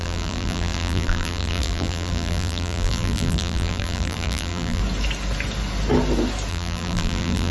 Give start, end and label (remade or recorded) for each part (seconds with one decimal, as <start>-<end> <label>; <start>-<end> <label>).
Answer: 0.0-4.8 remade; 4.8-6.5 recorded; 6.5-7.5 remade